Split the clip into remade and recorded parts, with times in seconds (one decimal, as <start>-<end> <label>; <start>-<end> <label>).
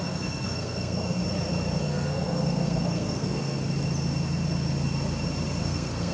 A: 0.0-1.2 remade; 1.2-1.8 recorded; 1.8-3.6 remade; 3.6-5.6 recorded; 5.6-6.1 remade